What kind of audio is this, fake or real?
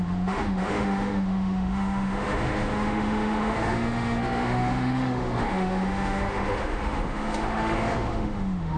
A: fake